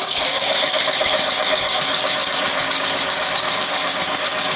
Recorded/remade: remade